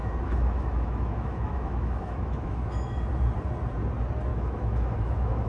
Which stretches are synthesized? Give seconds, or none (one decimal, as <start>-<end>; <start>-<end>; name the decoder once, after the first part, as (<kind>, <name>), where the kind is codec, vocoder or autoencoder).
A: 0.0-3.0 (autoencoder, DAC-VAE); 4.3-5.5